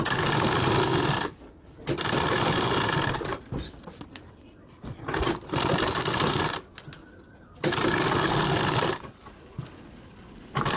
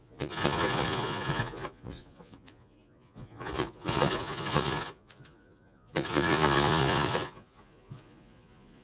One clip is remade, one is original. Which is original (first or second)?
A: first